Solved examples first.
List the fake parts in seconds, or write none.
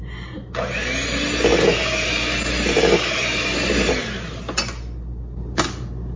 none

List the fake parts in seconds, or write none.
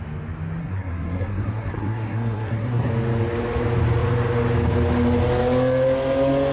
0.6-2.9 (codec, SNAC)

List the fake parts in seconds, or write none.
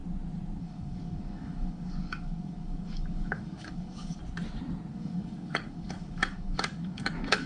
0.6-4.2 (codec, DAC); 4.9-7.5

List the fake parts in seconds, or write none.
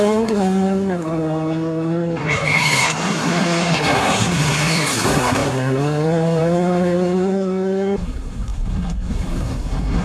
0.0-10.0 (codec, SNAC)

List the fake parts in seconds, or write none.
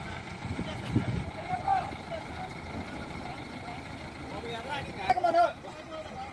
0.0-1.7 (vocoder, Vocos); 3.3-3.7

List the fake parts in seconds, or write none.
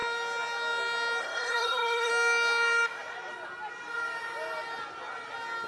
1.2-2.1 (codec, SNAC)